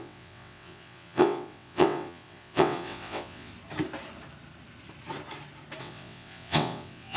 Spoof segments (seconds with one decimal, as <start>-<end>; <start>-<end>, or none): 0.0-3.5; 5.8-7.2